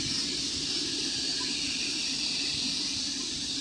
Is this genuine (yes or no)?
yes